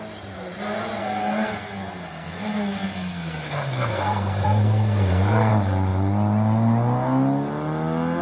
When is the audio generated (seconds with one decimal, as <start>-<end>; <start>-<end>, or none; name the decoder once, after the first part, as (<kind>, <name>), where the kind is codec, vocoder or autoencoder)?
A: 1.0-5.5 (codec, SNAC)